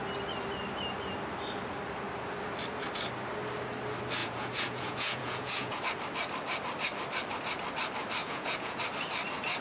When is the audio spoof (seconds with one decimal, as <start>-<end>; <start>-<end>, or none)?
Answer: 4.2-5.8; 8.2-8.8